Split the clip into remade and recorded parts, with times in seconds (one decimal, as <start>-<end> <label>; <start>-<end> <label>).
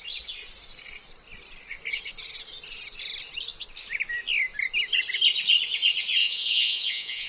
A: 0.0-6.2 recorded; 6.2-7.3 remade